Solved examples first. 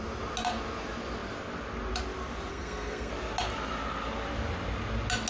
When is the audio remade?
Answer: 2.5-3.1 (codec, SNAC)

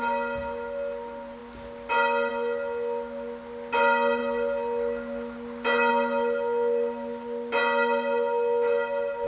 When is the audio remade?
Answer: none

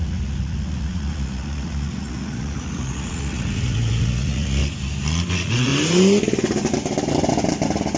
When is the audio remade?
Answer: 0.0-4.6 (vocoder, Vocos); 5.3-5.7

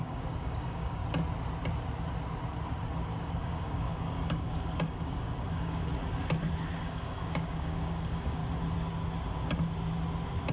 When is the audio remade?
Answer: 0.0-1.0 (codec, DAC); 3.2-5.9; 6.8-8.4

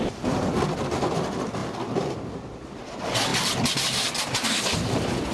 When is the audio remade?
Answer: none

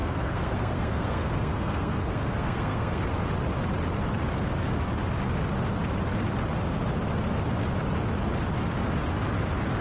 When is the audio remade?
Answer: 0.0-3.0 (codec, SNAC)

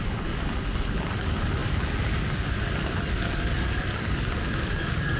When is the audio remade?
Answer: 0.0-5.2 (codec, DAC)